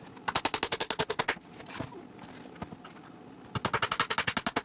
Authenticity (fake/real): real